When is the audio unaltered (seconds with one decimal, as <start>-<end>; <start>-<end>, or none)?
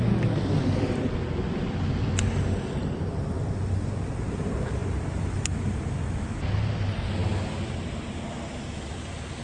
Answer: 0.0-9.4